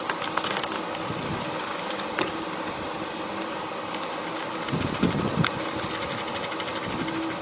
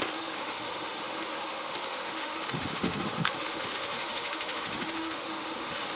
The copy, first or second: second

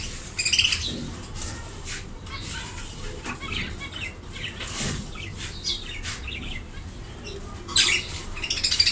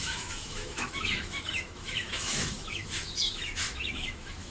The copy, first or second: second